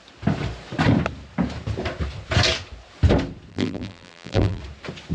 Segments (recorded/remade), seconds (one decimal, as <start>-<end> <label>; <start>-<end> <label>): 0.0-3.5 recorded; 3.5-4.6 remade; 4.6-5.1 recorded